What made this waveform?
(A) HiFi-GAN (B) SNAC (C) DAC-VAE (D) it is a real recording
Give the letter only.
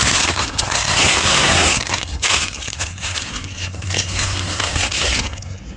B